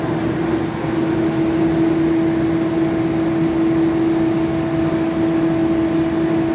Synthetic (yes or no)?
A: no